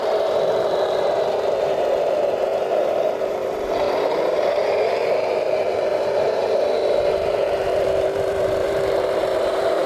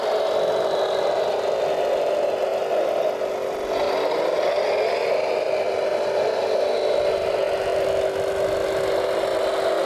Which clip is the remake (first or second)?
first